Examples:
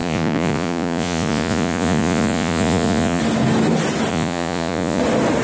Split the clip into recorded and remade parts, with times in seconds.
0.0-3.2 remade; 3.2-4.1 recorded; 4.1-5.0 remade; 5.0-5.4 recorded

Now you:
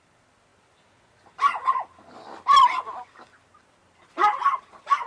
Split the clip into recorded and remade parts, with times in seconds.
0.0-5.1 recorded